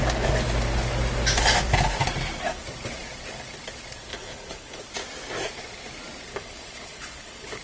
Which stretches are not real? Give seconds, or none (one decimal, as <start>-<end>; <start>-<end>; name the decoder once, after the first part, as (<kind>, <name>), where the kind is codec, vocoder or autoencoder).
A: 4.1-4.8 (codec, HILCodec); 6.3-7.6